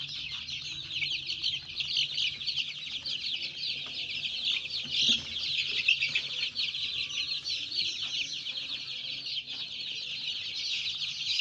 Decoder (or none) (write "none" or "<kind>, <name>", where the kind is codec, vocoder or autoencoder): none